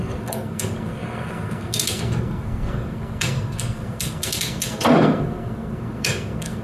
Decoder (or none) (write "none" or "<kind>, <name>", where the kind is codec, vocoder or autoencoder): codec, SNAC